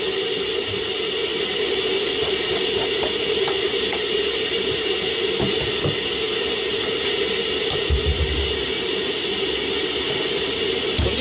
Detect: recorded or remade recorded